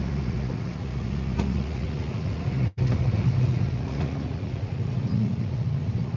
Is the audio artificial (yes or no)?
yes